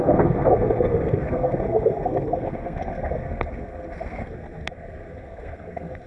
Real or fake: fake